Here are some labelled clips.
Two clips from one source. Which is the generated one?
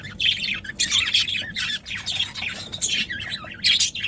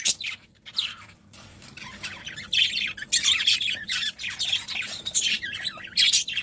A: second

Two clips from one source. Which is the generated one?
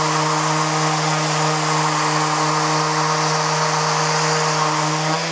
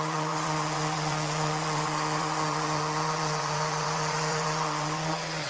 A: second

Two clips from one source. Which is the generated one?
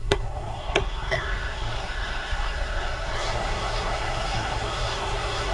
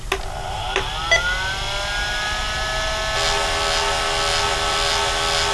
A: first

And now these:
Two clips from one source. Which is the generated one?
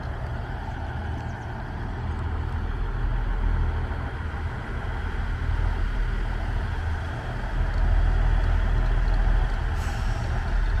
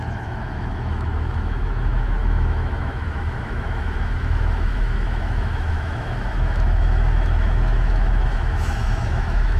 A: second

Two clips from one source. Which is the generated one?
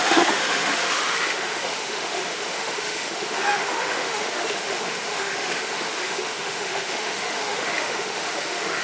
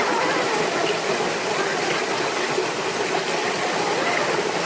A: first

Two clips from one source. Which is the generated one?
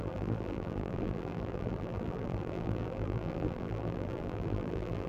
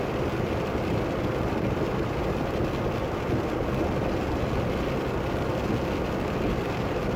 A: first